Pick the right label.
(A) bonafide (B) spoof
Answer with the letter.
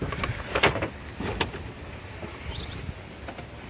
A